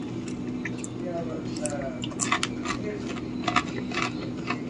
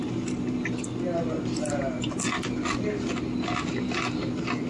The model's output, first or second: second